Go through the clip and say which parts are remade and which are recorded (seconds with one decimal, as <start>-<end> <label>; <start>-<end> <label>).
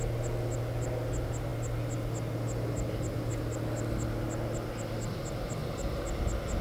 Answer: 0.0-6.6 recorded